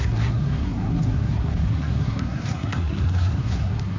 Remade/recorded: remade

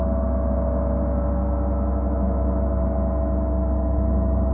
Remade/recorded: recorded